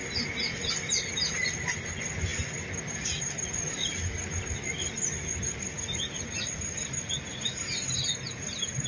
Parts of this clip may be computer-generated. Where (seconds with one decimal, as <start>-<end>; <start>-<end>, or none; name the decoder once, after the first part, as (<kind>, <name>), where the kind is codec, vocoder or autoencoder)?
none

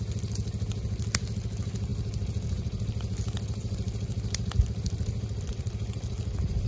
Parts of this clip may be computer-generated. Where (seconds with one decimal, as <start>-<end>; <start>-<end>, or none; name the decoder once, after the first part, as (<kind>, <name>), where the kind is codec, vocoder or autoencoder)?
none

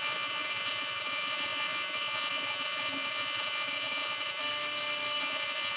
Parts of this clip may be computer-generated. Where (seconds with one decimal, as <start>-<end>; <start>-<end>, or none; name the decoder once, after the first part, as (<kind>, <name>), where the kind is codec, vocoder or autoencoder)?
0.0-4.4 (vocoder, Vocos); 5.2-5.8

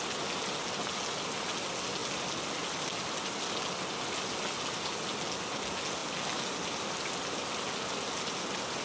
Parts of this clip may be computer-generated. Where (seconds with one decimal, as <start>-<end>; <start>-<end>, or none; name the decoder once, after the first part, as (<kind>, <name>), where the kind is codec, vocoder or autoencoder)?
none

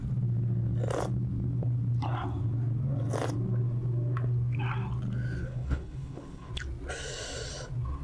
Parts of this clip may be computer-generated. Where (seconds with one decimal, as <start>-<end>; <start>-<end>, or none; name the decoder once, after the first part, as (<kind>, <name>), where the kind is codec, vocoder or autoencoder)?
5.4-6.5 (codec, HILCodec)

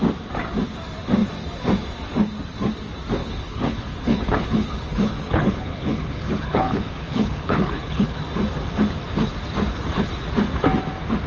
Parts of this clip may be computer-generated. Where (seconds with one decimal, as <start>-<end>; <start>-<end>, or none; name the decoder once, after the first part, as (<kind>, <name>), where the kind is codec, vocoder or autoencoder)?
3.2-8.2 (codec, HILCodec)